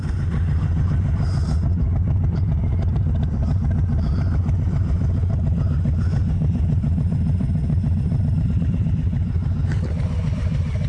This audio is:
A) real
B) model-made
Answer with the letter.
B